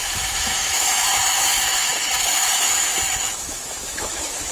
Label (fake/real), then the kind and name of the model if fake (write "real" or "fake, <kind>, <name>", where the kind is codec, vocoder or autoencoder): fake, autoencoder, DAC-VAE